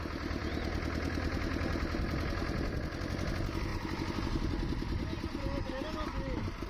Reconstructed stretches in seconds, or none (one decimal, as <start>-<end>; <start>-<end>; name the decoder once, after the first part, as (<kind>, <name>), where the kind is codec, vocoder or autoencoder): none